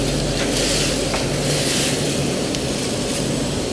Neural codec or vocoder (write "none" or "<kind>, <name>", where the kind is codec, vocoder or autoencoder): none